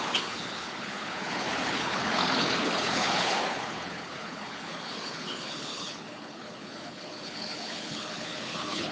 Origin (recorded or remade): remade